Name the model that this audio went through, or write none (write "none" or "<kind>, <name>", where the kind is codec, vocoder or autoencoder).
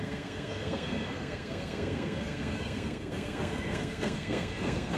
codec, SNAC